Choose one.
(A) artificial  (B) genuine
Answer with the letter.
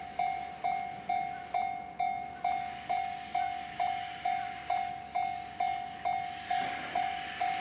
B